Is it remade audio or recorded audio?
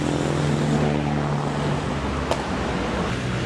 recorded